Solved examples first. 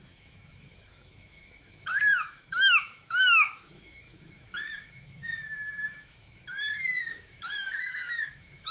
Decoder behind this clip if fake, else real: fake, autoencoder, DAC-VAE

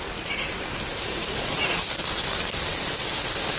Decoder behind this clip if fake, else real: real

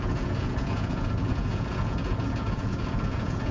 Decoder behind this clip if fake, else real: fake, vocoder, Vocos